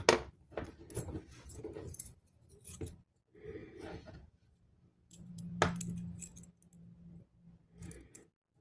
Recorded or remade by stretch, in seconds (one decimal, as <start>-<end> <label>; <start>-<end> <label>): 0.0-1.5 recorded; 1.5-2.5 remade; 2.5-3.6 recorded; 3.6-5.4 remade; 5.4-8.6 recorded